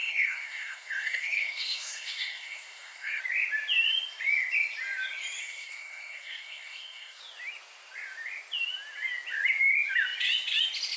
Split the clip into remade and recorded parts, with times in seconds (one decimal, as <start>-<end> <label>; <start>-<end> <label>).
0.0-3.2 remade; 3.2-5.4 recorded; 5.4-7.2 remade; 7.2-11.0 recorded